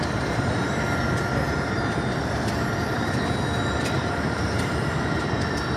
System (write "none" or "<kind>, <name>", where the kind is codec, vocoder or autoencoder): vocoder, BigVGAN v2